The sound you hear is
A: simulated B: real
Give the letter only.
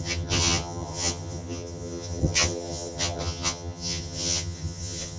A